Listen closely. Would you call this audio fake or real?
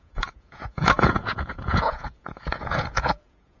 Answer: fake